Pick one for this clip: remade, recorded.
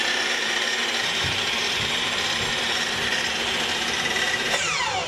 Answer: remade